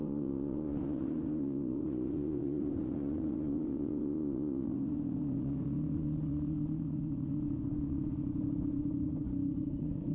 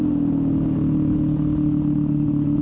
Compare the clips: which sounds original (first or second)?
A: second